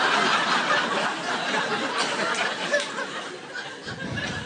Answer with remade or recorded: recorded